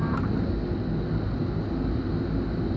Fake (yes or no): no